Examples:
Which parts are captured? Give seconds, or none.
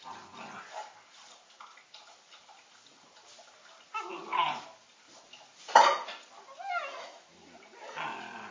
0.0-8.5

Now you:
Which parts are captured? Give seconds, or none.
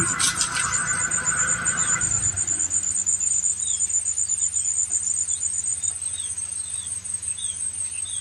0.0-0.8; 3.6-5.7; 7.3-8.2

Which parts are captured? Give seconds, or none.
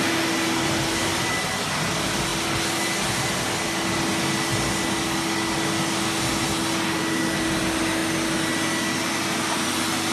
0.0-10.1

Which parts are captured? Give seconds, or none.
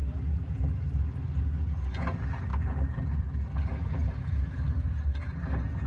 0.5-4.0; 5.2-5.9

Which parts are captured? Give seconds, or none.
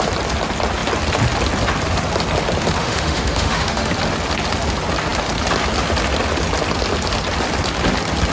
0.0-2.8; 3.9-8.3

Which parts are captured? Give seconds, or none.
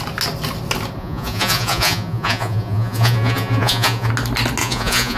0.0-1.0; 4.1-4.6